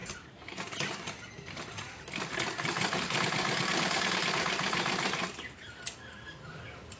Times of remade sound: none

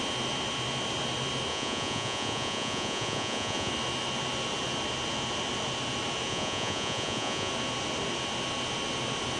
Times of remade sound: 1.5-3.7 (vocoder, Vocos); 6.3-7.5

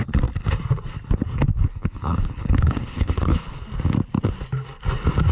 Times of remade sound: 1.7-3.6 (codec, HILCodec)